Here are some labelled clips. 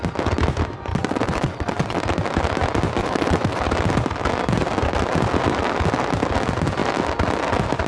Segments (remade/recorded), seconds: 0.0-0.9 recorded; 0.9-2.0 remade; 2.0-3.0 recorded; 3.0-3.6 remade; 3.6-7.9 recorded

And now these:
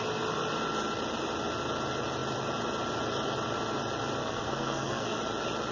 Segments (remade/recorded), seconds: 0.0-4.2 recorded; 4.2-5.2 remade; 5.2-5.7 recorded

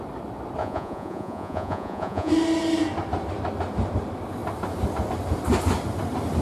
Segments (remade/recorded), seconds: 0.0-0.6 recorded; 0.6-2.3 remade; 2.3-6.4 recorded

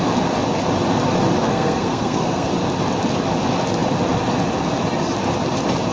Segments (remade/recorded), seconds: 0.0-1.5 recorded; 1.5-2.5 remade; 2.5-5.9 recorded

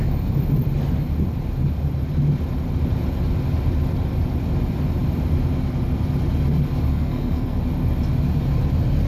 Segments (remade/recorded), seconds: 0.0-6.9 recorded; 6.9-7.6 remade; 7.6-9.1 recorded

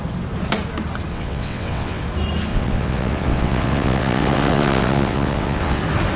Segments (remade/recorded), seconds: 0.0-1.1 recorded; 1.1-2.0 remade; 2.0-2.5 recorded; 2.5-5.8 remade; 5.8-6.2 recorded

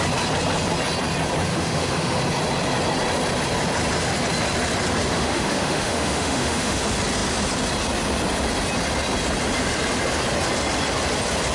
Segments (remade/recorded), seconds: 0.0-1.5 recorded; 1.5-2.2 remade; 2.2-5.1 recorded; 5.1-6.8 remade; 6.8-11.5 recorded